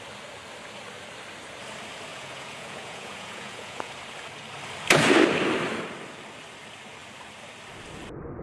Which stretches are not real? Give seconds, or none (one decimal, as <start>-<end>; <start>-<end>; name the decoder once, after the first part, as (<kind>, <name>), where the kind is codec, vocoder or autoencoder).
2.1-3.9 (vocoder, Vocos)